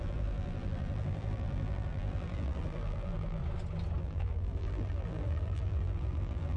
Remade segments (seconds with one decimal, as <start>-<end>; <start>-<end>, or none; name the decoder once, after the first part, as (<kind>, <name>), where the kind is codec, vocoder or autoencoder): 0.0-3.4 (vocoder, BigVGAN v2); 4.0-6.6